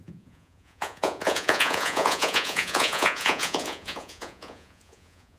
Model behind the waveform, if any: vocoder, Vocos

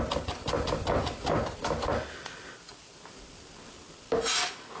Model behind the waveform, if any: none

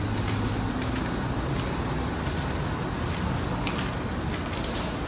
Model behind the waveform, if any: none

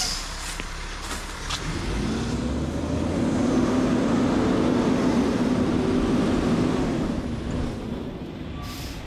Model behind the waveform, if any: none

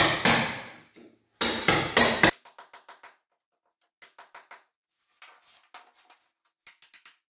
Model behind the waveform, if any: none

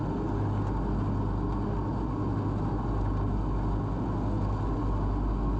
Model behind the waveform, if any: none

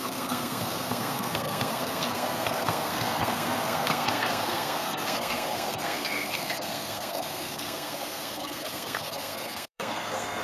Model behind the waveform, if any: codec, SNAC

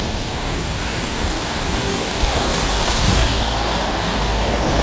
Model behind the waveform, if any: codec, DAC